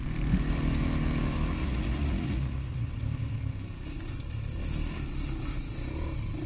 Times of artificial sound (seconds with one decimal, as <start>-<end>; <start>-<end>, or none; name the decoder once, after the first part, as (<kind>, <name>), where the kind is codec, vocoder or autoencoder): 1.6-2.9 (vocoder, Vocos)